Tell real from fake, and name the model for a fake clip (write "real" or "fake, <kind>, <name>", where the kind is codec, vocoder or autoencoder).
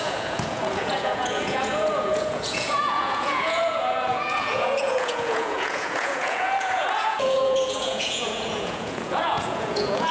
fake, vocoder, Vocos